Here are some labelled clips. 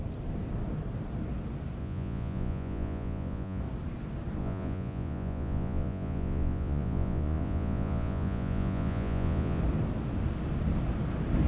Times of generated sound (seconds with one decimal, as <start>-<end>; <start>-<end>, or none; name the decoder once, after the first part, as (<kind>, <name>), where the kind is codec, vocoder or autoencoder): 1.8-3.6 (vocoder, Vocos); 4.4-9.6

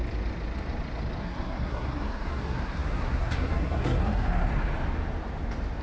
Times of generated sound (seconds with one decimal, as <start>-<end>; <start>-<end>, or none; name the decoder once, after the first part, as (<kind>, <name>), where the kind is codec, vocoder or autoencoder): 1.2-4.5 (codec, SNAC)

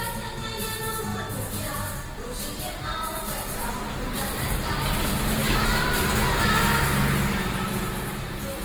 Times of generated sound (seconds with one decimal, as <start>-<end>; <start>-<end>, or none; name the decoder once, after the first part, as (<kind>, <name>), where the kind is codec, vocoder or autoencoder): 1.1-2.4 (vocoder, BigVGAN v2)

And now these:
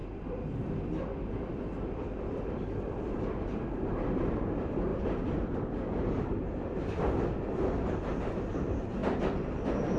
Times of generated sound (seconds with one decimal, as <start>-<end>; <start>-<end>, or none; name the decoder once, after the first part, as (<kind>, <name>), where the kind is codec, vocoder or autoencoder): 0.0-4.2 (vocoder, BigVGAN v2); 4.9-7.4